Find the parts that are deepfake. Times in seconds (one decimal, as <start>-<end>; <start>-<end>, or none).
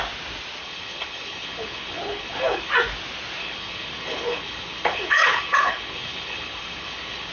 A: 0.6-2.7; 3.4-7.3